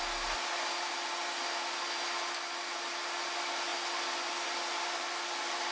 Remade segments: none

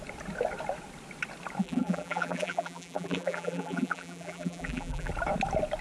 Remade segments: 1.6-5.1 (vocoder, BigVGAN v2)

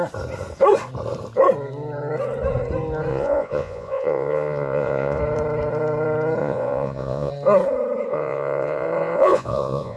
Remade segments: 3.1-5.2 (vocoder, Vocos); 6.4-7.3; 8.1-10.0

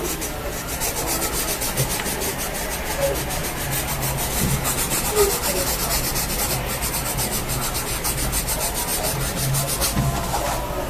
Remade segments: none

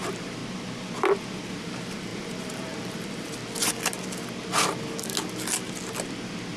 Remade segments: 0.0-0.4 (vocoder, BigVGAN v2); 1.5-3.4

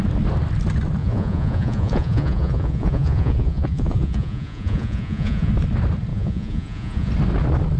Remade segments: 1.0-5.5 (vocoder, Vocos); 6.1-7.1

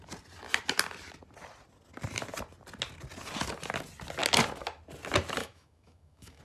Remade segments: 5.4-6.4 (autoencoder, DAC-VAE)